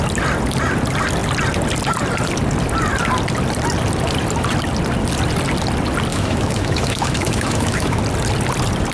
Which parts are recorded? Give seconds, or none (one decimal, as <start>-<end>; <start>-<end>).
0.0-6.1; 8.0-8.9